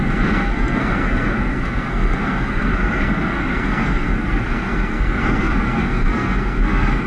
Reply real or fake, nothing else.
fake